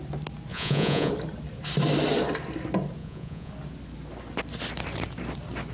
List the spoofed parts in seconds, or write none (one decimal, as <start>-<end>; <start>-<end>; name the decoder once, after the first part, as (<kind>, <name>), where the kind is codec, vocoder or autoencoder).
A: 0.5-1.1 (vocoder, Vocos); 3.0-3.5